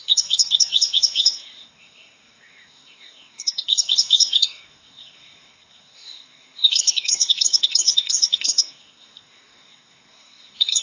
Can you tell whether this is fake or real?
fake